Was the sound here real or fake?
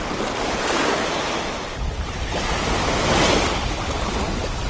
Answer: real